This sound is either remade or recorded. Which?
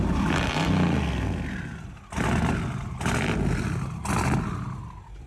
recorded